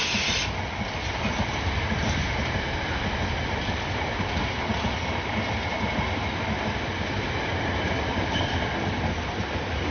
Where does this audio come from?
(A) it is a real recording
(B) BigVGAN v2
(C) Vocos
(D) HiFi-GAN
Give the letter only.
A